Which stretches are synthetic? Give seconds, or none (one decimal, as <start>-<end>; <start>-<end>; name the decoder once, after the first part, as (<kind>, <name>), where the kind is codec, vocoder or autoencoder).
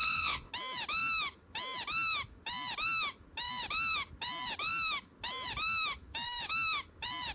0.0-0.5 (vocoder, WaveNeXt)